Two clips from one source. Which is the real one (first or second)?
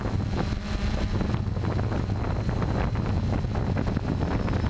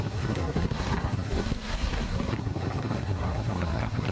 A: first